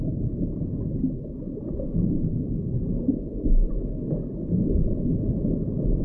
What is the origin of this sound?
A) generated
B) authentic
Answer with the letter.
B